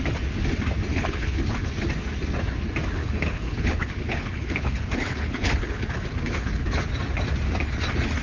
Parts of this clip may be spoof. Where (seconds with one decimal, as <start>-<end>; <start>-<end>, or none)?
0.9-1.7; 3.0-6.9